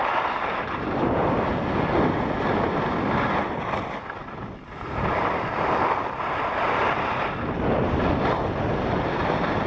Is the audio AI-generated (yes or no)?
no